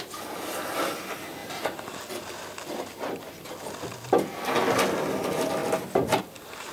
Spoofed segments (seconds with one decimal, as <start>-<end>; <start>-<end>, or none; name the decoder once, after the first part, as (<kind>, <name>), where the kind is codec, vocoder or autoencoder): none